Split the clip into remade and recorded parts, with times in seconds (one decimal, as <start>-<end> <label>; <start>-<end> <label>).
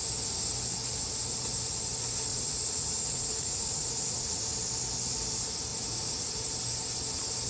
0.0-2.3 recorded; 2.3-4.4 remade; 4.4-5.7 recorded; 5.7-6.3 remade; 6.3-7.5 recorded